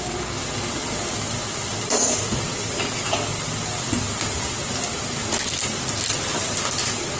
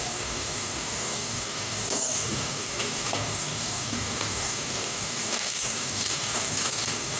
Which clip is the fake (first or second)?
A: second